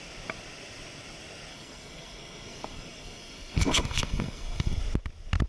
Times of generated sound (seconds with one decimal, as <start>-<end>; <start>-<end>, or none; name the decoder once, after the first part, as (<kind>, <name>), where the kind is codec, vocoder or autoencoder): 1.5-4.8 (codec, SNAC)